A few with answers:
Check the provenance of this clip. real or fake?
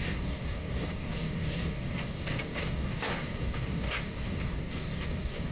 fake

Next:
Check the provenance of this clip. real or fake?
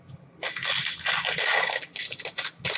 real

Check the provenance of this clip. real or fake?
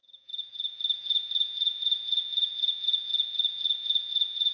fake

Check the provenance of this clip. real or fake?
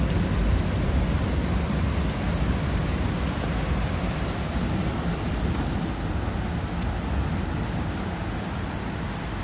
real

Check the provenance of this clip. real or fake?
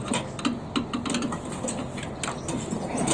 real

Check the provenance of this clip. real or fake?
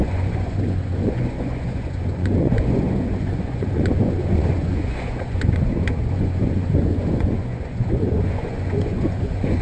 fake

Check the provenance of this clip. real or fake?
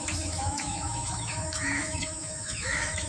fake